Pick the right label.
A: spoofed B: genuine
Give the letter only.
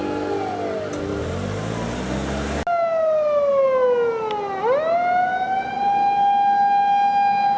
B